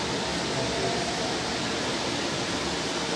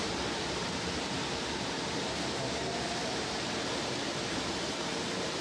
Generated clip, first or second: second